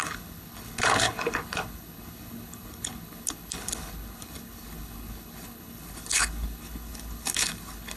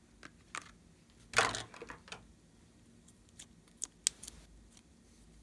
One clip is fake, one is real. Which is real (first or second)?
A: second